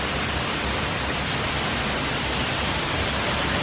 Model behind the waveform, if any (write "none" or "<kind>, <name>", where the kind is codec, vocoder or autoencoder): none